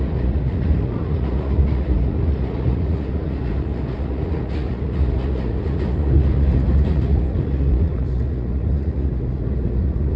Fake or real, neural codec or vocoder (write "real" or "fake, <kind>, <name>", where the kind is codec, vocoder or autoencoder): fake, vocoder, Vocos